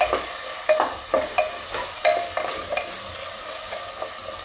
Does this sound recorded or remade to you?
recorded